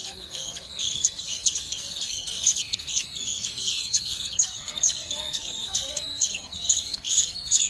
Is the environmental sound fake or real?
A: fake